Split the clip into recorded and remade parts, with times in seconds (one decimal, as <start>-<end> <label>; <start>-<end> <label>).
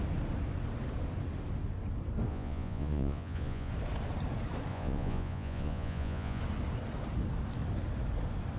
0.0-2.3 recorded; 2.3-3.7 remade; 3.7-4.7 recorded; 4.7-6.4 remade; 6.4-8.6 recorded